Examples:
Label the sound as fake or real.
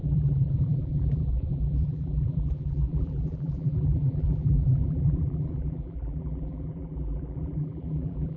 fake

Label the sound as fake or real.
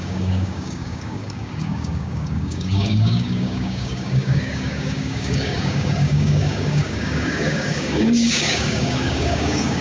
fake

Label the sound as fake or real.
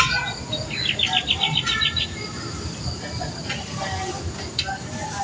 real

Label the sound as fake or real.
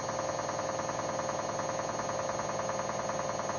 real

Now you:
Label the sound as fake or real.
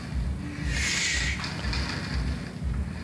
real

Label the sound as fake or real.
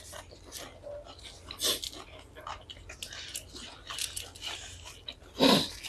real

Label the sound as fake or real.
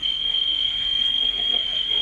fake